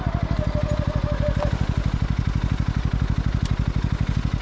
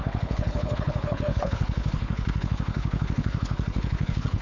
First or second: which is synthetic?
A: second